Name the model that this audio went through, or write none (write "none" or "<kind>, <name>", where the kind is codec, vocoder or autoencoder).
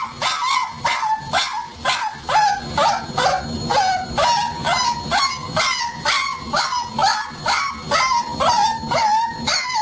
none